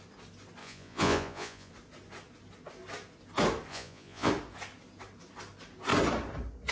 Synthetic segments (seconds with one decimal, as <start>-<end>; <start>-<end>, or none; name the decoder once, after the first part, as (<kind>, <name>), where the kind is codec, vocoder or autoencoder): 0.6-1.7 (vocoder, Vocos); 3.7-4.3